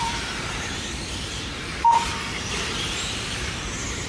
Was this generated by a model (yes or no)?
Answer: yes